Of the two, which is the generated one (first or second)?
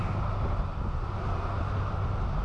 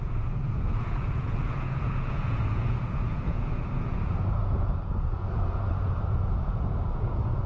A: second